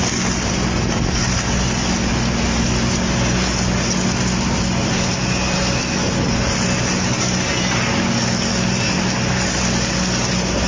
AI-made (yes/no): no